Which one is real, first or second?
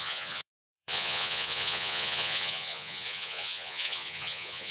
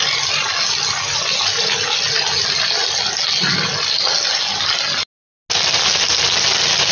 second